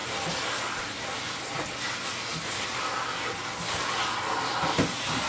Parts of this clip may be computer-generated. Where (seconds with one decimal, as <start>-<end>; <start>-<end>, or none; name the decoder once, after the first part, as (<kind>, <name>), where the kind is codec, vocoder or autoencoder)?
none